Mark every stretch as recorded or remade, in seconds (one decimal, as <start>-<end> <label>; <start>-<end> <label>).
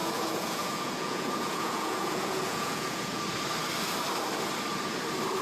0.0-3.2 remade; 3.2-5.4 recorded